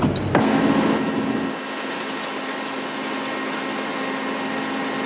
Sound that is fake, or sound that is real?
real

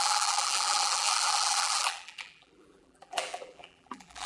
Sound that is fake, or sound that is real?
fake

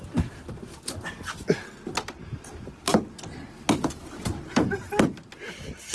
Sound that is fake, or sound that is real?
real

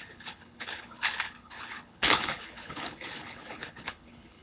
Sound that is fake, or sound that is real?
fake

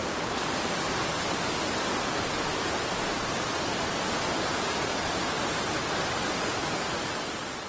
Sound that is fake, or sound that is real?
real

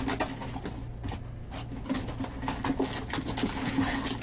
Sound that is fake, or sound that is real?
real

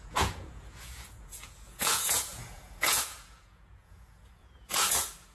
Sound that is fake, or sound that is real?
fake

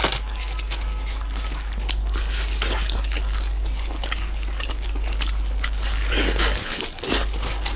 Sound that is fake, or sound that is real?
fake